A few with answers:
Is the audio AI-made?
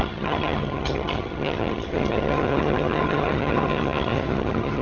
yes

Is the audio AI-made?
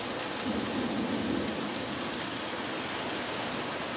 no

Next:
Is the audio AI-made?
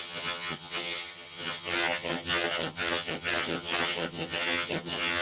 yes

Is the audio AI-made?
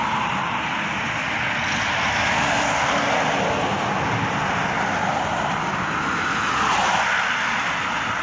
no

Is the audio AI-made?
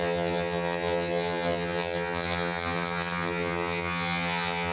yes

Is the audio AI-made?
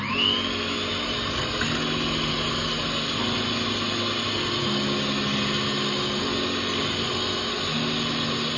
no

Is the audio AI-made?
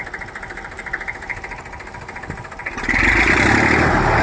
no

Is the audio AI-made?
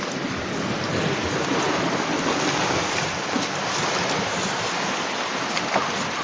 no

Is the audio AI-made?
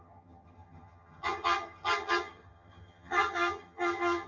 yes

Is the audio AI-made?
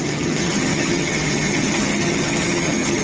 yes